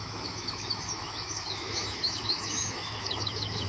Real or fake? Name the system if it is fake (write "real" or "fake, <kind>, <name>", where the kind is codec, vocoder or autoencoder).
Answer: fake, autoencoder, DAC-VAE